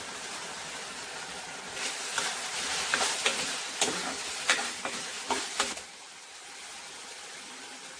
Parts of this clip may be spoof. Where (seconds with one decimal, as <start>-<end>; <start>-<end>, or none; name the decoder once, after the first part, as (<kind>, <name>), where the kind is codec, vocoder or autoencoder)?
none